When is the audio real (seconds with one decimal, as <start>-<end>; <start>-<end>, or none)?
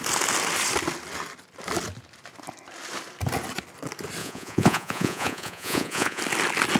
0.0-4.2; 6.2-6.8